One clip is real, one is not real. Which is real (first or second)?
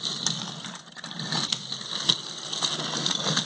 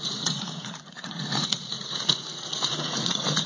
first